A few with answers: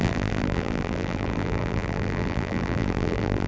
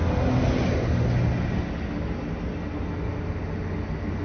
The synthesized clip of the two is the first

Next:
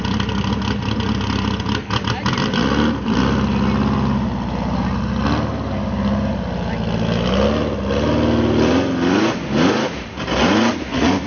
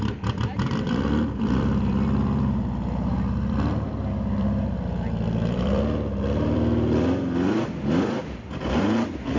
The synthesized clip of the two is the second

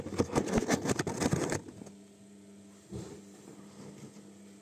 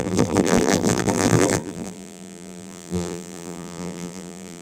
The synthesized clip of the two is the second